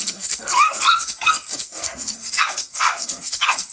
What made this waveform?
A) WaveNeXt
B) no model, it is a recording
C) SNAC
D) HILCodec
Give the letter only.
C